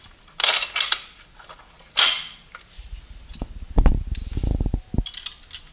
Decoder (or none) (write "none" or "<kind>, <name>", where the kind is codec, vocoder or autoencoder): none